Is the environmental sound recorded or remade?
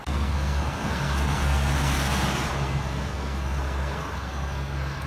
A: remade